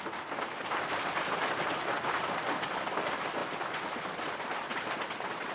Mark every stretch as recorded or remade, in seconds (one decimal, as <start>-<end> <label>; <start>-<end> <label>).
0.0-5.5 recorded